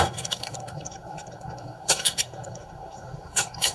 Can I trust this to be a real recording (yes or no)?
no